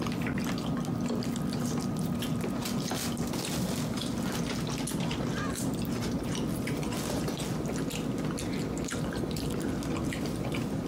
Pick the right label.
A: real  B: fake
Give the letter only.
A